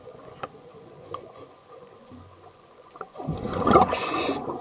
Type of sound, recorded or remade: remade